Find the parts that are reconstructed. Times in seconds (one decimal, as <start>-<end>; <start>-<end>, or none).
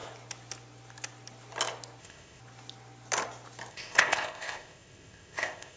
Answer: 2.0-2.4; 3.7-5.8